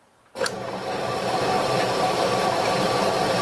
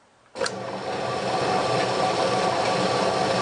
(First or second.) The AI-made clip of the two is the first